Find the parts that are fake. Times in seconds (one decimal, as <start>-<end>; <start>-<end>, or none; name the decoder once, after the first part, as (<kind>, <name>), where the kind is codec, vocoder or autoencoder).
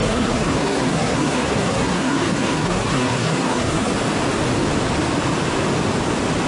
0.0-3.9 (codec, SNAC)